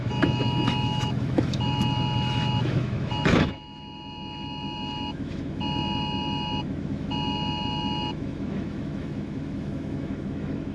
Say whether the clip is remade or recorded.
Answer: remade